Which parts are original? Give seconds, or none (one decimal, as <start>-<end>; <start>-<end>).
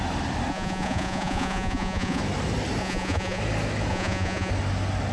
0.0-0.5; 2.2-2.8; 3.4-3.9; 4.5-5.1